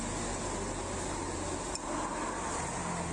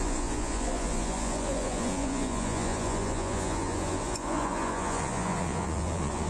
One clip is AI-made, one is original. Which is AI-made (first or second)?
second